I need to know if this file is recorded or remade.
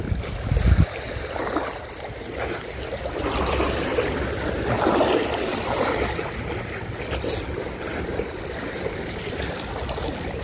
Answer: recorded